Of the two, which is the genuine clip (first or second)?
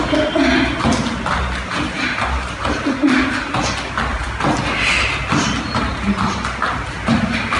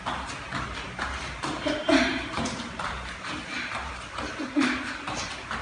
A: first